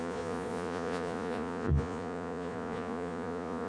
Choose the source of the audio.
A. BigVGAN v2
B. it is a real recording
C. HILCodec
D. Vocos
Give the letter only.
D